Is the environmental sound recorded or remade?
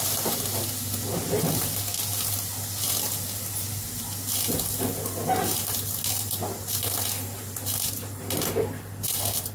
recorded